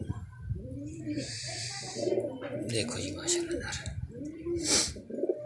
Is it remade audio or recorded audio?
recorded